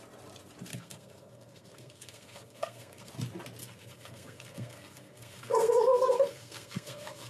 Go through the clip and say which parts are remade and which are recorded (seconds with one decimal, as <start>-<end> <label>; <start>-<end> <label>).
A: 0.0-0.7 recorded; 0.7-3.1 remade; 3.1-3.6 recorded; 3.6-7.3 remade